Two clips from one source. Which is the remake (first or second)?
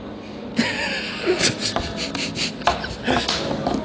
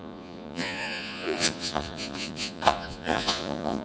second